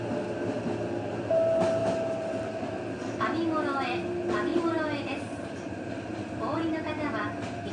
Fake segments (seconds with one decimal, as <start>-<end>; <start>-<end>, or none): 1.8-3.2; 4.5-5.9